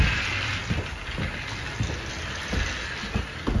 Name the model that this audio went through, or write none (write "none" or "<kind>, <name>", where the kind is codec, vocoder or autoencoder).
none